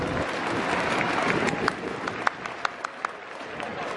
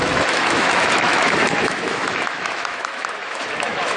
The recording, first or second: first